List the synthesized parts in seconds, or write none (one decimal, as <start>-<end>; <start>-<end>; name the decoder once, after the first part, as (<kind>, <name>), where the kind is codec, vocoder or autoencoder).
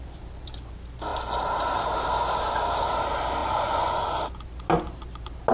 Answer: 3.4-4.2 (vocoder, Vocos)